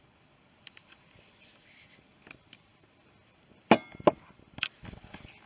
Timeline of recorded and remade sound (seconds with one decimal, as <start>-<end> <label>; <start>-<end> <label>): 0.0-5.5 recorded